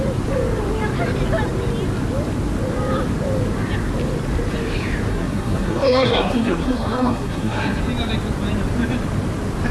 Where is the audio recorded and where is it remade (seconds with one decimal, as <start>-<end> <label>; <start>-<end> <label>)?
0.0-5.1 recorded; 5.1-7.8 remade; 7.8-9.7 recorded